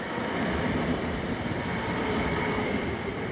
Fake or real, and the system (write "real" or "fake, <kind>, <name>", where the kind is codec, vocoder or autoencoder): fake, vocoder, BigVGAN v2